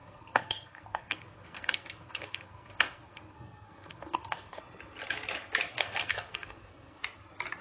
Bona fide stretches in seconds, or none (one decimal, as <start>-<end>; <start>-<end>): 4.6-5.7; 7.0-7.6

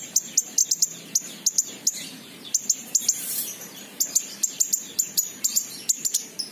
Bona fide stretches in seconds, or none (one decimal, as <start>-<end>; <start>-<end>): none

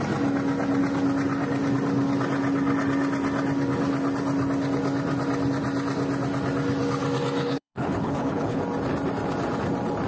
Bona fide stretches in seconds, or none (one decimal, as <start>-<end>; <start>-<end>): 0.0-7.4; 8.6-10.1

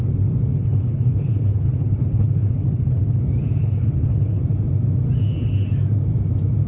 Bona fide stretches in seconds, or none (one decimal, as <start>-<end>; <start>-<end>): 0.0-0.5; 3.2-3.6; 4.4-6.7

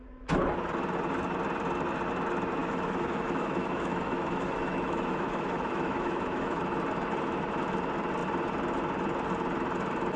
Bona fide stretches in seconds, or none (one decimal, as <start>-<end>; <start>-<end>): 0.0-2.6; 6.6-10.2

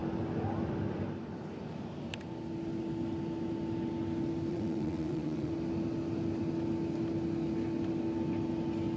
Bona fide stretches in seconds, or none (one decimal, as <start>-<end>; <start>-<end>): 0.0-4.5; 5.5-9.0

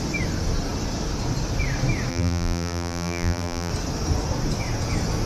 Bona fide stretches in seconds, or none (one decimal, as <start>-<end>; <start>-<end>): 0.0-2.1; 3.7-5.3